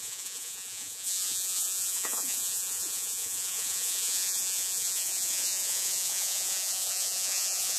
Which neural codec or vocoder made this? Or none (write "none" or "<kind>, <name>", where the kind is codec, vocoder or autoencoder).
vocoder, Vocos